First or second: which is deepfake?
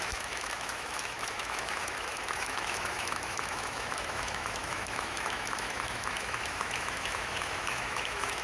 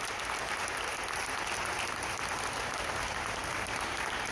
first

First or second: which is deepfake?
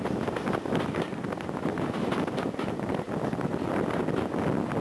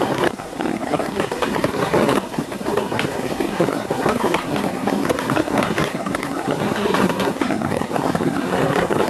second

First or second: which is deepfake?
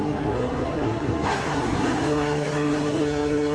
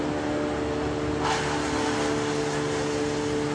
first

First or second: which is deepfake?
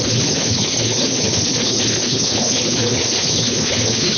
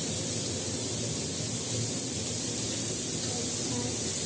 first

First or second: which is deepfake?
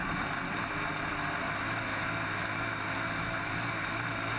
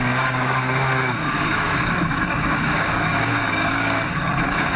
second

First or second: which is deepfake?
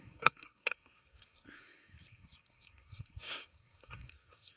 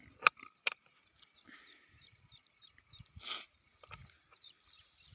first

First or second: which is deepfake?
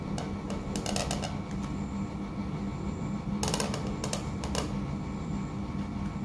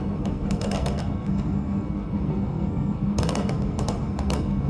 second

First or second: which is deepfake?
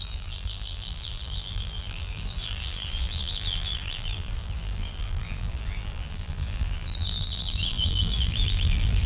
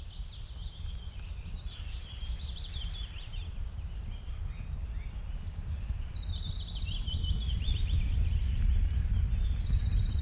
first